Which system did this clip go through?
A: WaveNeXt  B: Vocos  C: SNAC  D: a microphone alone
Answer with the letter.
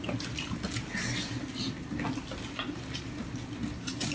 D